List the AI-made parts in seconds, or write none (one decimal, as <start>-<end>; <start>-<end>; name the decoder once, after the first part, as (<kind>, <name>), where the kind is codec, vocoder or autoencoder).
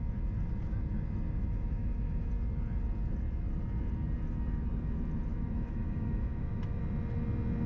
1.4-2.3 (autoencoder, DAC-VAE); 5.3-6.8